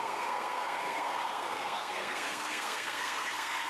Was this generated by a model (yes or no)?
yes